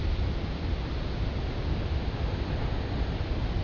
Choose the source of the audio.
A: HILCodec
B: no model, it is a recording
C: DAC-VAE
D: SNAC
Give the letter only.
B